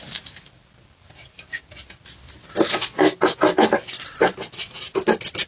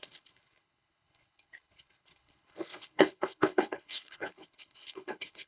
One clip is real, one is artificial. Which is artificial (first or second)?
second